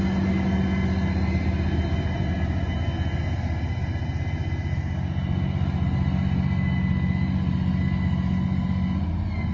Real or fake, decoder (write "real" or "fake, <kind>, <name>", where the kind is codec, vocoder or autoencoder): real